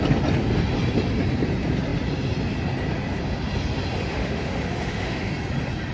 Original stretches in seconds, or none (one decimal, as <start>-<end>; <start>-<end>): 0.0-4.1; 5.3-5.9